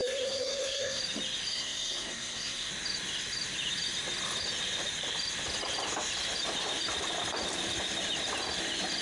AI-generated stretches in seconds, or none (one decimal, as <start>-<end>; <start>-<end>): 0.0-1.0; 1.5-2.7